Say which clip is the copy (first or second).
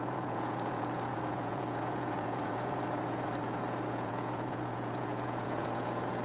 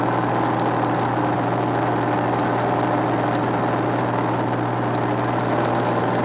first